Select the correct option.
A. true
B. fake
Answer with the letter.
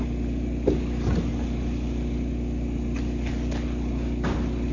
A